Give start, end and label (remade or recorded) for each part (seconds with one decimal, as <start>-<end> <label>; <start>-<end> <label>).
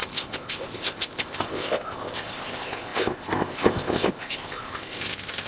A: 0.0-5.5 remade